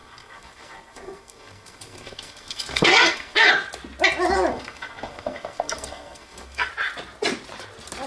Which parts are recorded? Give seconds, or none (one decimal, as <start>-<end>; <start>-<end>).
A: 3.5-4.5; 6.7-8.1